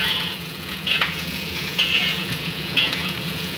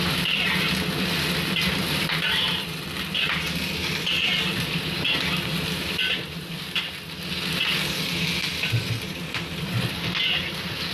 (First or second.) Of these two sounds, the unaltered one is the second